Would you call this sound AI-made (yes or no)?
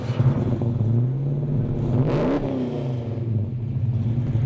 no